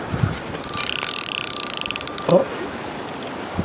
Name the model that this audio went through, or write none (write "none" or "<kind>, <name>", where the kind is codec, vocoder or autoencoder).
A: none